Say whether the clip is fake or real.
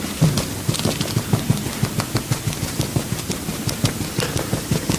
real